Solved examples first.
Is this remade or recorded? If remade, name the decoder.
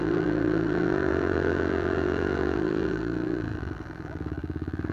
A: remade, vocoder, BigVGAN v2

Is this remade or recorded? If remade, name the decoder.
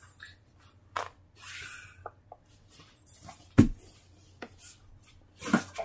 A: recorded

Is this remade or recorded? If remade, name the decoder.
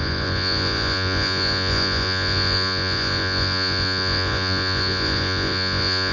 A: remade, vocoder, Vocos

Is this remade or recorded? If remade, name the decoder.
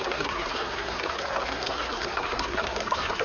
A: remade, codec, SNAC